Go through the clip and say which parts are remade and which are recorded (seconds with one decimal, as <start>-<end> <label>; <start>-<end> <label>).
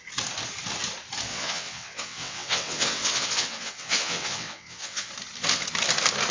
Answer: 0.0-1.3 recorded; 1.3-5.1 remade; 5.1-6.3 recorded